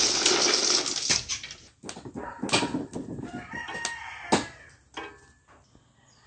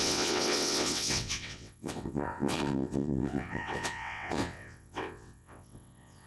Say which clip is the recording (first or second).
first